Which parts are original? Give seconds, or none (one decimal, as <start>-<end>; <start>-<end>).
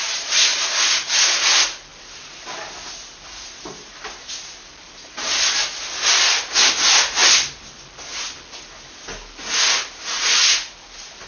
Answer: 0.0-11.3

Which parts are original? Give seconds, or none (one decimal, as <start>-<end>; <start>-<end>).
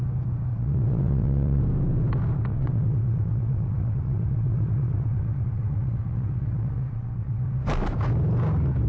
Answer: 0.0-0.5; 1.6-2.5; 7.4-8.9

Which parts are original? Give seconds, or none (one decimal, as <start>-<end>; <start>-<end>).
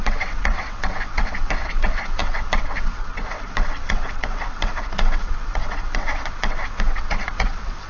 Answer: none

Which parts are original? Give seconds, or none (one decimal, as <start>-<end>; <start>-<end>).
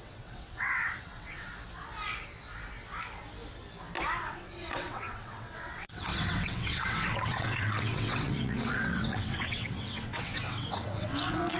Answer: 1.5-4.2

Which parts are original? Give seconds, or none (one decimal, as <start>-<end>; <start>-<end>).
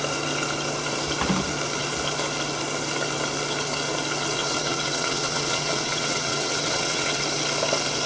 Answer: 0.0-4.4; 7.2-8.1